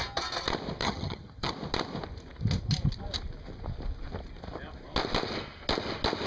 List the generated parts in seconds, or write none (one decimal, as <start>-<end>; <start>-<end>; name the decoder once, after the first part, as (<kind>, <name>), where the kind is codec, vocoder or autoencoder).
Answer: 0.8-1.5 (vocoder, HiFi-GAN)